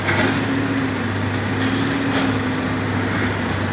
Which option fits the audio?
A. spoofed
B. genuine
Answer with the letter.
B